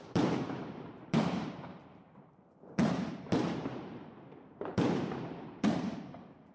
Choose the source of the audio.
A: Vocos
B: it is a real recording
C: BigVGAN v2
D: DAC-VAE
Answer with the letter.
C